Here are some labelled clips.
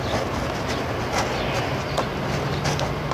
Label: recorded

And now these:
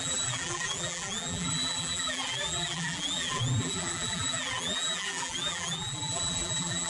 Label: remade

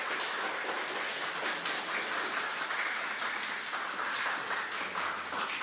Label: recorded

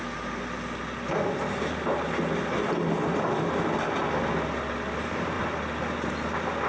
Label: recorded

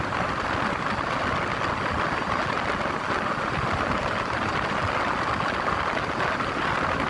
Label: recorded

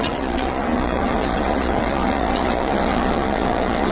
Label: remade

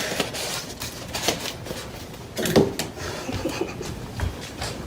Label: recorded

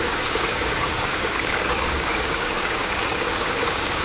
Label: remade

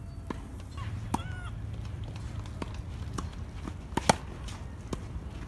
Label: recorded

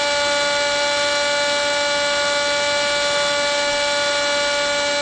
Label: recorded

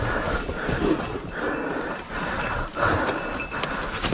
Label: recorded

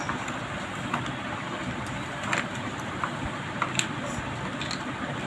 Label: recorded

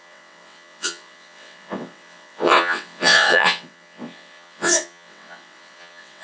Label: remade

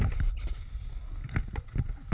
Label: recorded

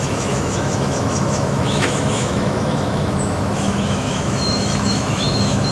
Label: remade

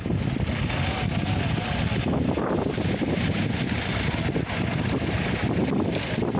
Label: recorded